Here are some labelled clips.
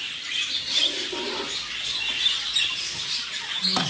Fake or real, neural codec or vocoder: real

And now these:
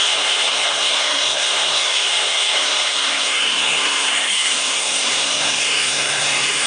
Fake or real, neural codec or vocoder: fake, codec, SNAC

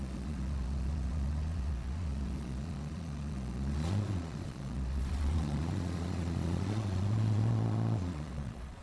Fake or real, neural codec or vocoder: fake, vocoder, Vocos